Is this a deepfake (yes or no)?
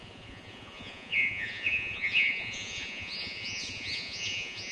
yes